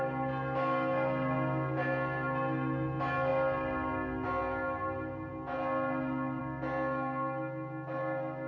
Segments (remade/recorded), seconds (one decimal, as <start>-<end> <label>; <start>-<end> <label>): 0.0-8.5 recorded

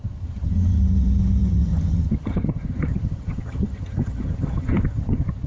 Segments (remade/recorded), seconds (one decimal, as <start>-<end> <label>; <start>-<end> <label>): 0.0-5.5 remade

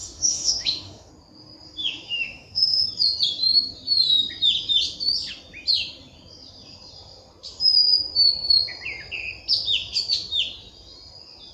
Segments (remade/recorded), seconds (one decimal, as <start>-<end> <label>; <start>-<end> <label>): 0.0-1.1 remade; 1.1-1.8 recorded; 1.8-2.8 remade; 2.8-11.5 recorded

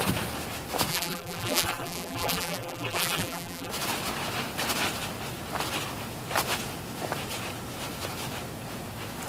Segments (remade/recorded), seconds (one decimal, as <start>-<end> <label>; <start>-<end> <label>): 0.0-0.9 recorded; 0.9-3.7 remade; 3.7-9.3 recorded

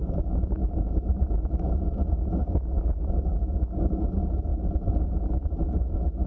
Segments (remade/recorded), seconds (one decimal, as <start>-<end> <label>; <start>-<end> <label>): 0.0-0.7 remade; 0.7-2.4 recorded; 2.4-4.1 remade; 4.1-6.3 recorded

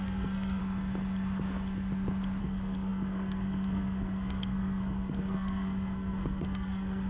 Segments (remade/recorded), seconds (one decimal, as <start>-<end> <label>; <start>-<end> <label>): 0.0-0.6 remade; 0.6-2.4 recorded; 2.4-7.1 remade

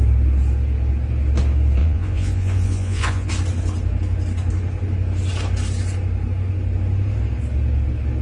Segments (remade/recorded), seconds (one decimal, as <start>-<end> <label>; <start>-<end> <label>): 0.0-1.8 recorded; 1.8-3.3 remade; 3.3-8.2 recorded

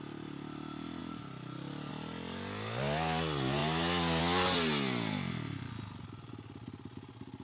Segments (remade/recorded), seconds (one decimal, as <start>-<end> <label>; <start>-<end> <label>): 0.0-7.4 recorded